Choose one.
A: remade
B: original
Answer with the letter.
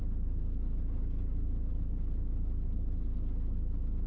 A